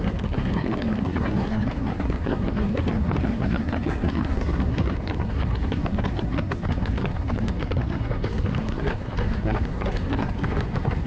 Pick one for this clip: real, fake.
fake